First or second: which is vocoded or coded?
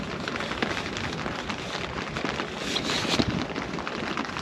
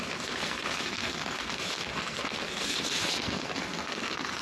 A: second